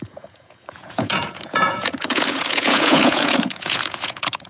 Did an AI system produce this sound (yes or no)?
yes